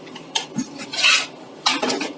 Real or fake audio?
real